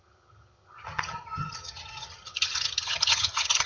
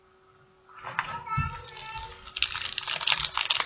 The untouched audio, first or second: second